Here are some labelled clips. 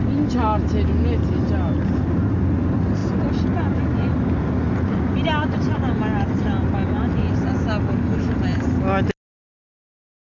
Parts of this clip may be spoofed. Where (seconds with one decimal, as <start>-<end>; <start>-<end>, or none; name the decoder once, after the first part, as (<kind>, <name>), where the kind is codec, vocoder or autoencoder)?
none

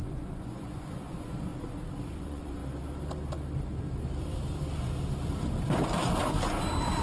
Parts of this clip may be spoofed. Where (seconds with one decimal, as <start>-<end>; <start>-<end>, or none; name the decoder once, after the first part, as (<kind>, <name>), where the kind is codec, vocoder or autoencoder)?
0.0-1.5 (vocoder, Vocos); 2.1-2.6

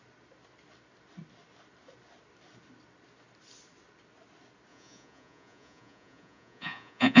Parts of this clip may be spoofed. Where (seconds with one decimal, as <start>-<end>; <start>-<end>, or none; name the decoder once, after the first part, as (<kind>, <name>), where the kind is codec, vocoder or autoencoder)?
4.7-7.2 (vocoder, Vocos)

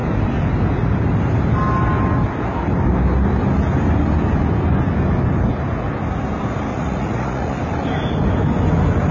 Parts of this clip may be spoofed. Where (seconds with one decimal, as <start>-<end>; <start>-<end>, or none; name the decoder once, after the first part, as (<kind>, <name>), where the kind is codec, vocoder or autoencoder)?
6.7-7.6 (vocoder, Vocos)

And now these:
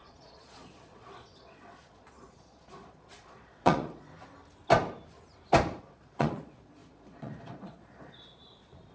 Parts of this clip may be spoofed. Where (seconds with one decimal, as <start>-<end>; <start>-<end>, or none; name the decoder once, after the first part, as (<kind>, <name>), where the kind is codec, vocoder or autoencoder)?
0.0-4.1 (vocoder, Vocos); 5.8-8.9